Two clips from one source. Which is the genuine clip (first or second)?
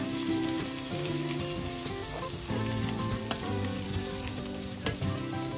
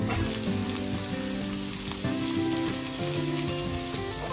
second